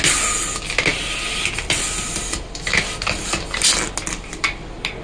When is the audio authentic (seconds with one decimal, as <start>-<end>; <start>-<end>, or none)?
0.0-5.0